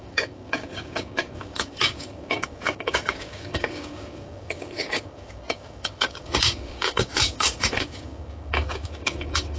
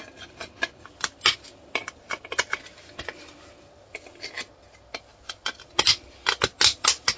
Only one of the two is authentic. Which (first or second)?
second